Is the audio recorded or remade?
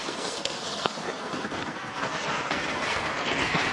remade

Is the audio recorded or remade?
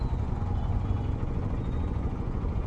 remade